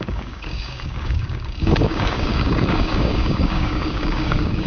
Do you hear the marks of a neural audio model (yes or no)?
yes